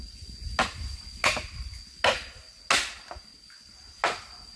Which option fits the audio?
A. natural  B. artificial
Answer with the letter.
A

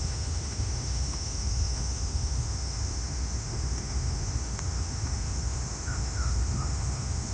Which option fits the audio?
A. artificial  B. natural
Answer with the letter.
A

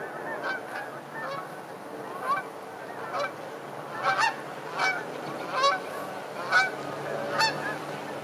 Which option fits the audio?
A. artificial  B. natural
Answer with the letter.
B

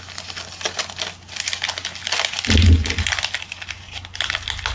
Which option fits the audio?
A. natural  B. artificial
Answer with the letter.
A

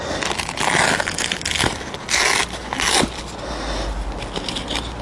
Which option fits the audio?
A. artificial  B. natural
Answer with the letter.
B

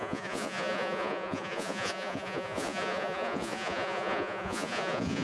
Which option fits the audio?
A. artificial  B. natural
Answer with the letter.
A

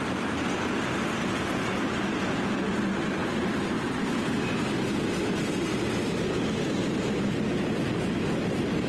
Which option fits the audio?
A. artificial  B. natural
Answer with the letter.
B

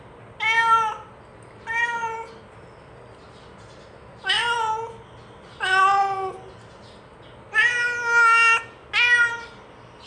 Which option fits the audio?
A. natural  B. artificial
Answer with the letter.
A